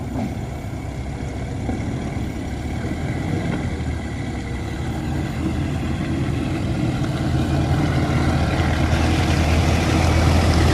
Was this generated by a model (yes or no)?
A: no